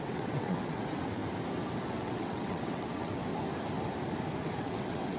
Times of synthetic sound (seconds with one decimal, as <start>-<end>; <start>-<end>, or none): 0.0-1.2; 1.9-3.3; 4.4-5.2